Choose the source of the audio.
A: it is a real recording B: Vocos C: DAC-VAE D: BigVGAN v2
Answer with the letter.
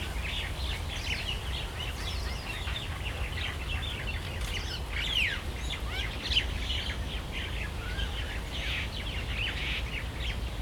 A